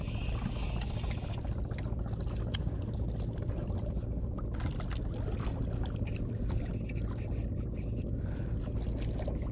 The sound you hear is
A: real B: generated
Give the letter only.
A